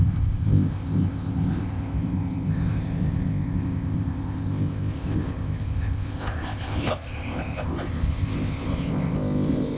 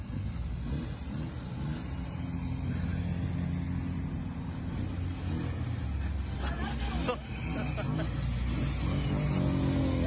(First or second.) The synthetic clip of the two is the first